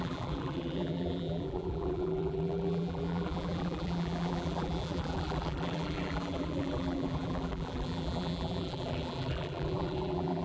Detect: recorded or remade remade